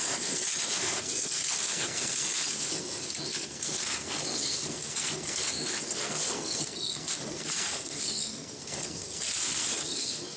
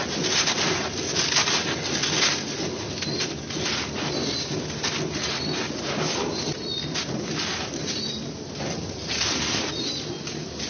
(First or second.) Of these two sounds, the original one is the second